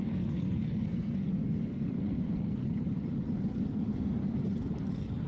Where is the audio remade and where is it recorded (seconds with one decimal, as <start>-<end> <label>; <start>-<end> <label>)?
0.0-2.6 remade; 2.6-3.7 recorded; 3.7-4.2 remade; 4.2-5.3 recorded